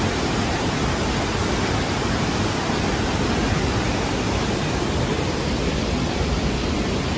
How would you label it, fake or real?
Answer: real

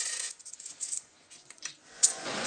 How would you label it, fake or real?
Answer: fake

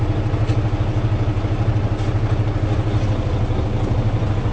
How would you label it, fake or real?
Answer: real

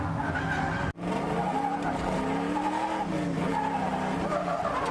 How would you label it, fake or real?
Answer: real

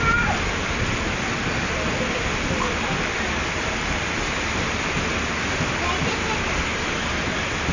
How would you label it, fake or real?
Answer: real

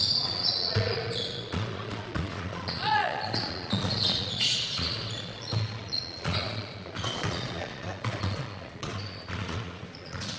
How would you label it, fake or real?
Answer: fake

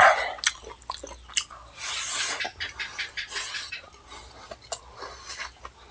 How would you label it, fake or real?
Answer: real